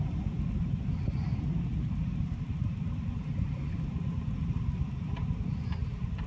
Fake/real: real